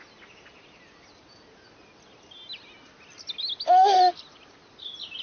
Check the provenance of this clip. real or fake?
real